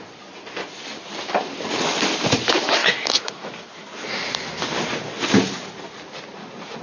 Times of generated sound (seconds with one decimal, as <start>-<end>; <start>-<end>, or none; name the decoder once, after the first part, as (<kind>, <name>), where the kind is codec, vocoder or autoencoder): 2.8-3.5 (autoencoder, DAC-VAE)